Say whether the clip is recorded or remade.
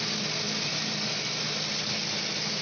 recorded